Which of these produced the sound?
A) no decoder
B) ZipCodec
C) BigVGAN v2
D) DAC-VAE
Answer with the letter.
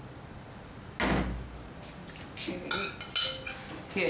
A